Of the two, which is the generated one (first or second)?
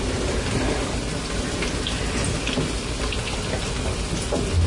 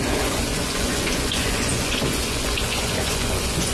second